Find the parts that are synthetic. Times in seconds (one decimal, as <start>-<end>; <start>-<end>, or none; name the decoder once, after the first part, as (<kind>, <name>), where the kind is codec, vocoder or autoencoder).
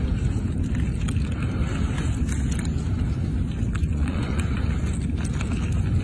3.8-4.7 (vocoder, Vocos)